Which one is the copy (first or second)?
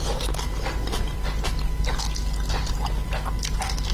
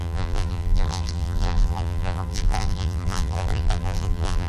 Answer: second